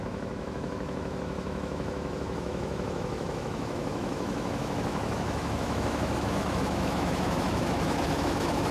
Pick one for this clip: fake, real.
fake